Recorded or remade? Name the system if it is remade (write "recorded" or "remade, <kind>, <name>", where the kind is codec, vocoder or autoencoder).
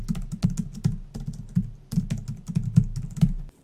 recorded